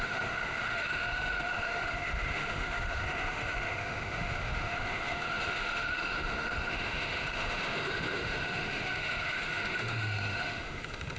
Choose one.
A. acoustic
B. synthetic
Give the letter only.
B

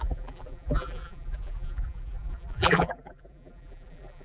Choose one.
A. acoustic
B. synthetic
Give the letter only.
B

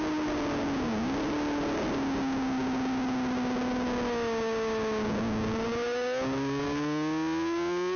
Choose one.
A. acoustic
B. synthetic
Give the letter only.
A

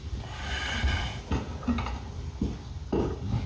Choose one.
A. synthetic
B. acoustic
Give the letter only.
B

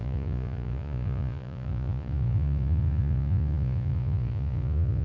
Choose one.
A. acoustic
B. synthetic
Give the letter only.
B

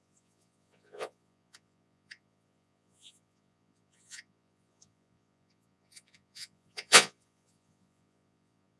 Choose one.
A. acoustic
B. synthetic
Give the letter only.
B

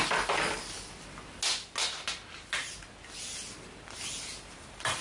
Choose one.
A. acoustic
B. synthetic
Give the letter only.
A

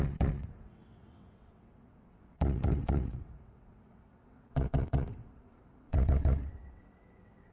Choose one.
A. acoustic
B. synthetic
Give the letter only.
B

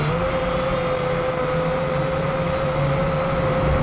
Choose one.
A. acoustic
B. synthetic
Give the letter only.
A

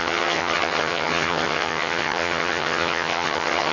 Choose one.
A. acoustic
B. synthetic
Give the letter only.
B